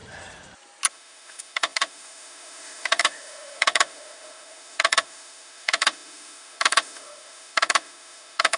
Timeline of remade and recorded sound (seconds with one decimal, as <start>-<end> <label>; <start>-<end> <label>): 0.0-0.9 recorded; 0.9-8.6 remade